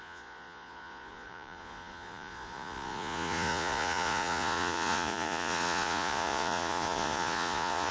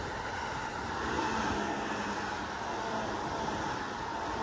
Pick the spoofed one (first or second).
first